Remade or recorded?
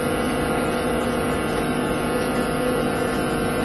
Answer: recorded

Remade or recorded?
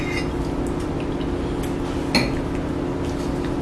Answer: recorded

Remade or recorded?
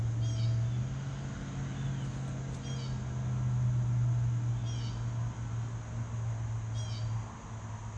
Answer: recorded